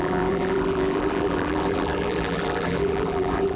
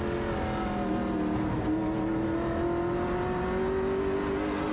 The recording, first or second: second